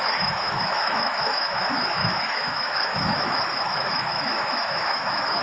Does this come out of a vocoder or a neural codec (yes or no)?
yes